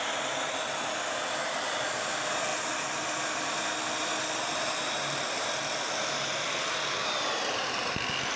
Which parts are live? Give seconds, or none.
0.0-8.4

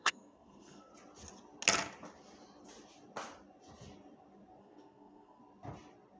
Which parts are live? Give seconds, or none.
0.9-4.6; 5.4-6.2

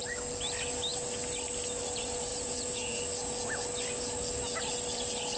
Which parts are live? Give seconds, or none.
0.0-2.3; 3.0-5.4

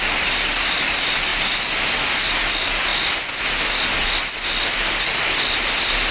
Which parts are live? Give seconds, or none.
0.0-6.1